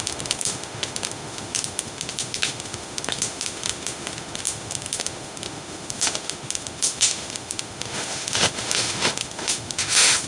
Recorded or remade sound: remade